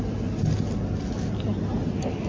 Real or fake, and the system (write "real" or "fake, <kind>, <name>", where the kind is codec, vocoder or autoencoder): real